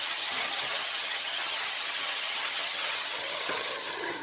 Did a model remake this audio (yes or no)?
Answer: yes